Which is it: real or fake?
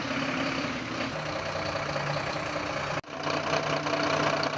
real